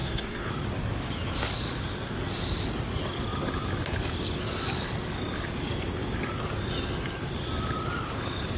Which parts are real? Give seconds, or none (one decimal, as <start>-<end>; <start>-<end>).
0.5-8.6